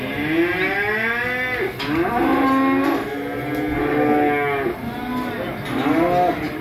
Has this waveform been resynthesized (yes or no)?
no